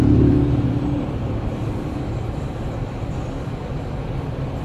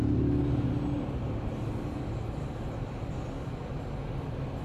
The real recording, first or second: second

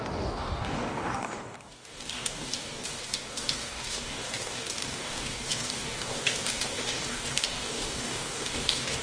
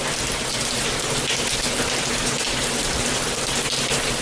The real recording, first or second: second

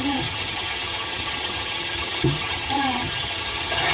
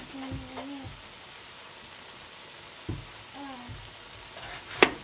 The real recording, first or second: second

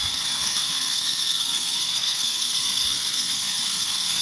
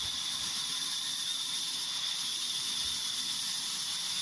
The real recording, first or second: second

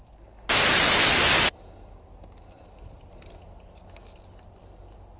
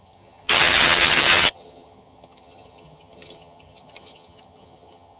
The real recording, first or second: first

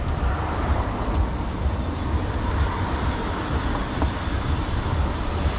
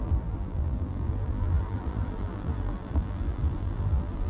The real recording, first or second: first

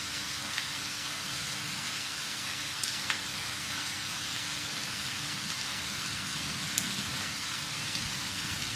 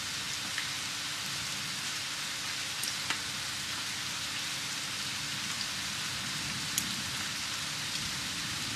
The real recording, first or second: second